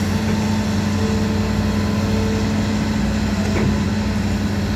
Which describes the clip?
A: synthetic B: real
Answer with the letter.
B